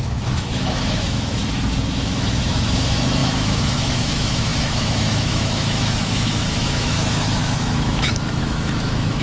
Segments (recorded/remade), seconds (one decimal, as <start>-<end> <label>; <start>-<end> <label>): 0.0-1.4 remade; 1.4-1.9 recorded; 1.9-9.2 remade